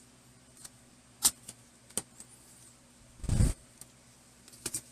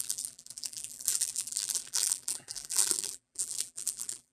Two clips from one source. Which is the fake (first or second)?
second